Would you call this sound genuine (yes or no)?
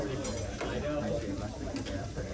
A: yes